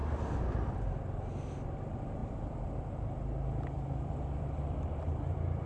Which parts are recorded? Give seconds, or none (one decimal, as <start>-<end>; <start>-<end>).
0.7-2.2